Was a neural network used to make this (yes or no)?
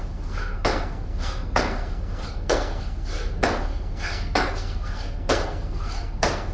yes